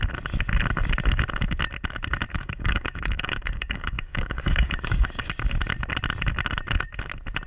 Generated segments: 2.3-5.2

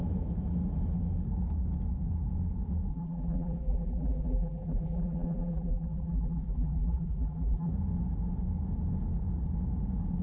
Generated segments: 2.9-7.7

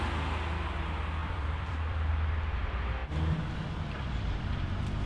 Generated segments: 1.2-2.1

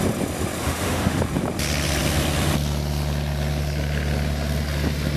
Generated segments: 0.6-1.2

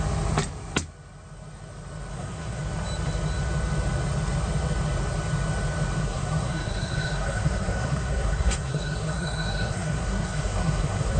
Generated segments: 2.1-2.6; 6.0-11.2